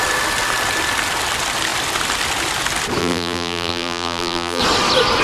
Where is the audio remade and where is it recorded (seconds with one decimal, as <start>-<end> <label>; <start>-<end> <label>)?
0.0-3.0 recorded; 3.0-4.6 remade; 4.6-5.2 recorded